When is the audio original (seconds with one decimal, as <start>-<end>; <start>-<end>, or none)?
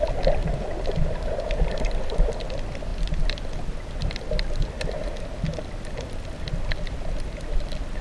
0.0-0.4; 0.9-8.0